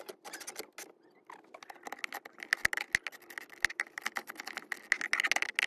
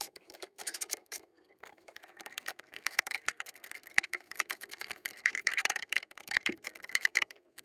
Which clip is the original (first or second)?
first